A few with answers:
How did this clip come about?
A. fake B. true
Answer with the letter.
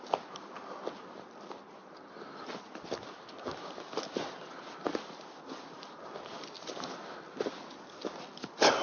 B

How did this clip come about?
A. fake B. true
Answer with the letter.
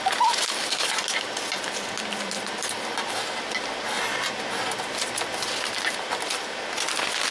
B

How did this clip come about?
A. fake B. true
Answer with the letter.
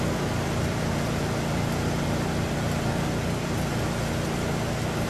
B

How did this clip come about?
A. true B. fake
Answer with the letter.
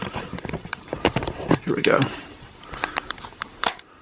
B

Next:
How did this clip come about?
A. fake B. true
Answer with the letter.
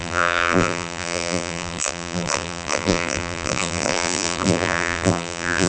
A